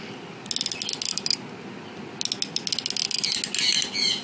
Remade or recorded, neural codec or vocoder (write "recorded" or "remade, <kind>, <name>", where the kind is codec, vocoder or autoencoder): recorded